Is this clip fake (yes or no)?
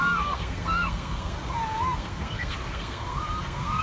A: yes